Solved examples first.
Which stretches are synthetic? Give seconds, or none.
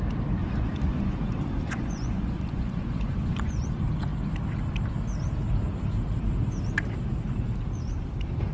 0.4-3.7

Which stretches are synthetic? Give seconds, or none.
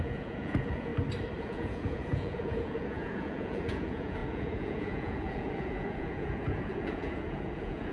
0.0-0.9; 1.4-7.9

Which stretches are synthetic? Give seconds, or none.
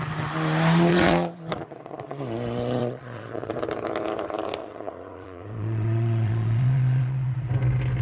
0.9-2.2; 2.8-3.5; 4.6-7.5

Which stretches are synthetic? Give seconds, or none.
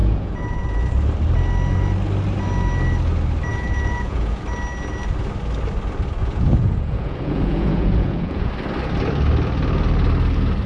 0.0-0.8; 3.5-4.4; 6.2-8.5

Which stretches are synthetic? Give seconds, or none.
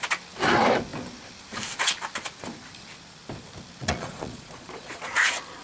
3.8-5.1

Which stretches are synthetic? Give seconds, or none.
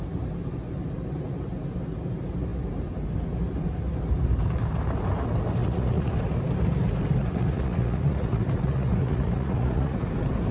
5.6-6.1; 7.2-10.1